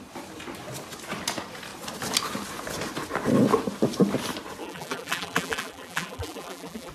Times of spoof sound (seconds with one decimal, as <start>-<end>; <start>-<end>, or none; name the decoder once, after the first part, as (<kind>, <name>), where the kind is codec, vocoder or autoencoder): 4.6-6.9 (vocoder, BigVGAN v2)